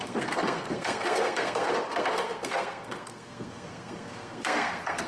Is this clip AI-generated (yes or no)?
yes